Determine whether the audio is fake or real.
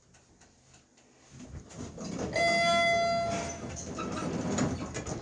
real